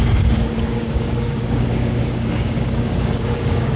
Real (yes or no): no